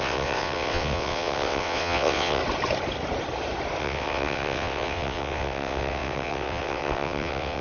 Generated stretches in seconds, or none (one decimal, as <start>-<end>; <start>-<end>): 0.0-2.4; 3.8-7.6